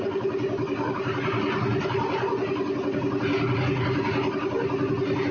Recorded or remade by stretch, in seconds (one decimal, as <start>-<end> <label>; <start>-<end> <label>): 0.0-5.3 recorded